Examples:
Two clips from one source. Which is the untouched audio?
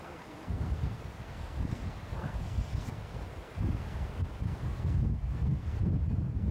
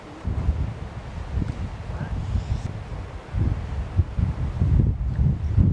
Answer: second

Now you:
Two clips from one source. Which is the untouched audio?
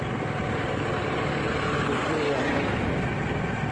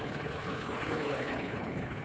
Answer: first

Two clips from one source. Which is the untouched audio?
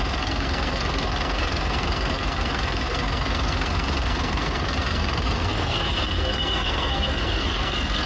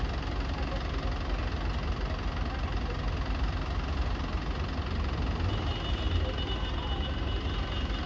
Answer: second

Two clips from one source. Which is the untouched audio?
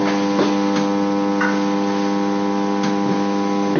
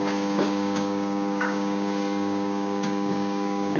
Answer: first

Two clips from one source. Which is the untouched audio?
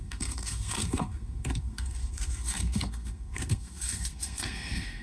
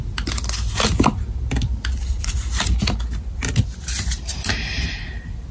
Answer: second